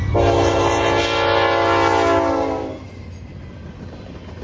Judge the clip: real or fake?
real